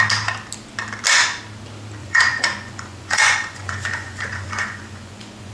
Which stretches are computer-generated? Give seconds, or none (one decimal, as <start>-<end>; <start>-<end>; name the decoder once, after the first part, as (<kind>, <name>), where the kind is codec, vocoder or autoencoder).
2.0-5.5 (vocoder, Vocos)